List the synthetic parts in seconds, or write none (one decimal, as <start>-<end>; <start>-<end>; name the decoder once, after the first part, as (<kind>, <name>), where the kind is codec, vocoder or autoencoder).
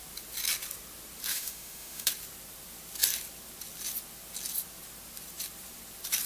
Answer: 1.3-2.1 (autoencoder, DAC-VAE)